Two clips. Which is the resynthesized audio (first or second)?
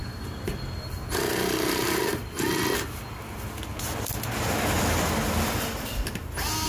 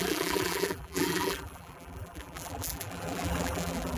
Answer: second